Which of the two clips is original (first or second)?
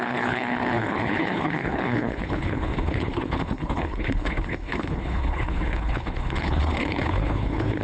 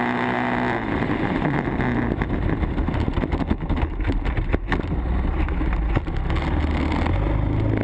second